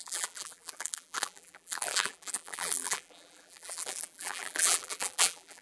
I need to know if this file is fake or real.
fake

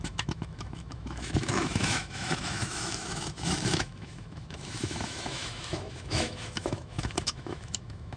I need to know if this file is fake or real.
fake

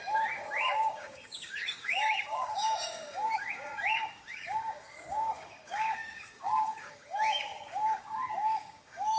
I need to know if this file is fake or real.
fake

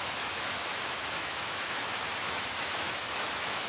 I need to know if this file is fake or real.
fake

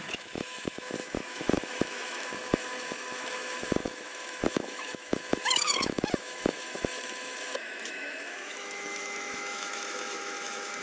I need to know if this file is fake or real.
fake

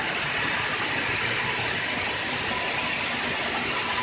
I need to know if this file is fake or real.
real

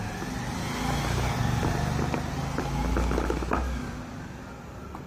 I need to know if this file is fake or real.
real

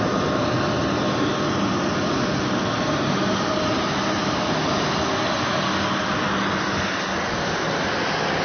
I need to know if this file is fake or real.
real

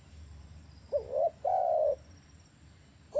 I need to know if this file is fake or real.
fake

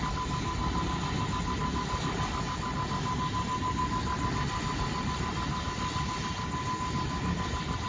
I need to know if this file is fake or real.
real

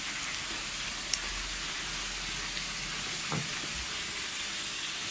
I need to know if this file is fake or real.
real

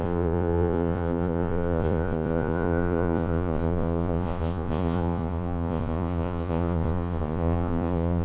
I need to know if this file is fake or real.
fake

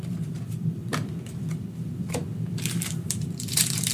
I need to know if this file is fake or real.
fake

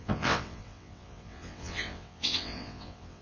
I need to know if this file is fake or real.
fake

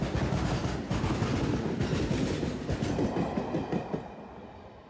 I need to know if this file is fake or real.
real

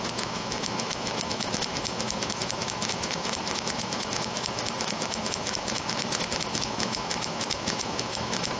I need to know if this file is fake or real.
fake